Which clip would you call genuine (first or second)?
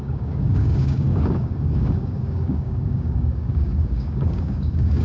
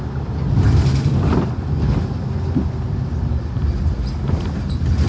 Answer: second